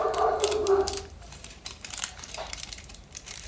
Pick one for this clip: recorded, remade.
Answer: remade